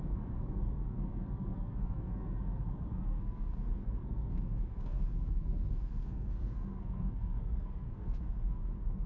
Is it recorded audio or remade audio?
remade